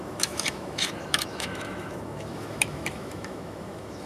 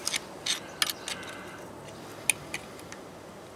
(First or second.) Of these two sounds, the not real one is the first